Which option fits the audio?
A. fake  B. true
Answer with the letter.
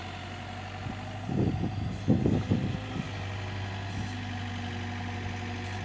B